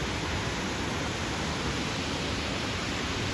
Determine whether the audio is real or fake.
real